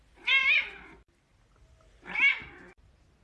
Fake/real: real